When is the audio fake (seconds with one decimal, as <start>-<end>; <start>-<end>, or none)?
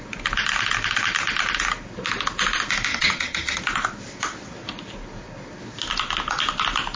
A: 2.9-3.6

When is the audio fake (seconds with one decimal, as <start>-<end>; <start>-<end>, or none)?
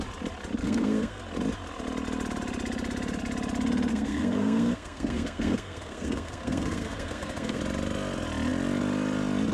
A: 0.6-1.2; 3.9-7.6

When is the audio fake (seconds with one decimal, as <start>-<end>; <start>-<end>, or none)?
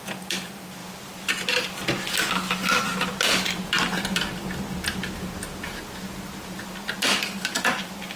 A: none